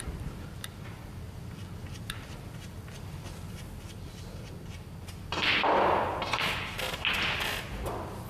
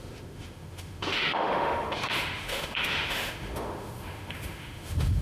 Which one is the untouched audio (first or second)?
first